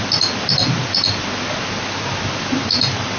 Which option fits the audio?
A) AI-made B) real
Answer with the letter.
B